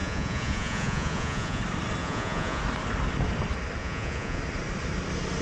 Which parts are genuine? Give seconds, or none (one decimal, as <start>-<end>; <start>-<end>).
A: 1.6-2.0; 2.6-3.8; 4.4-5.4